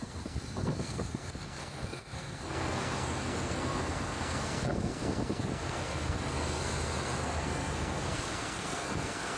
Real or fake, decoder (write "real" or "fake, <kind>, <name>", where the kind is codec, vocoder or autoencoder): fake, codec, SNAC